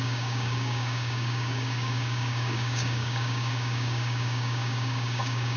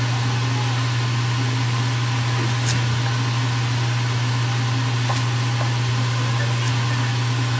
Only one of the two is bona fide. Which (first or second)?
second